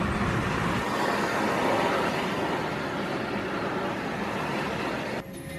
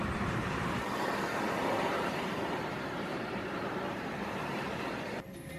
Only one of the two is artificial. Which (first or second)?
second